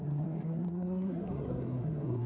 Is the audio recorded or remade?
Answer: remade